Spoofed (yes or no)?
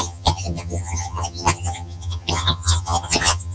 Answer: yes